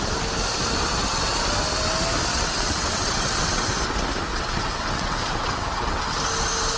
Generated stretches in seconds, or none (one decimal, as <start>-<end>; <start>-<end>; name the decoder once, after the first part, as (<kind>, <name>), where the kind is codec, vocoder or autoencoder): 2.3-3.7 (vocoder, WaveNeXt); 4.3-6.1